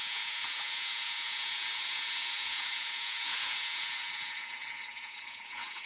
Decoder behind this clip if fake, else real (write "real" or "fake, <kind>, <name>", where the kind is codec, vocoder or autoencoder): fake, vocoder, Vocos